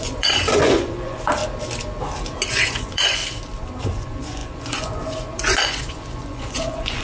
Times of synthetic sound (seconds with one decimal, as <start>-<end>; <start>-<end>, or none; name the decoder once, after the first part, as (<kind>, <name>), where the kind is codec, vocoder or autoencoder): 0.0-1.4 (vocoder, Vocos); 2.5-3.2; 3.8-7.0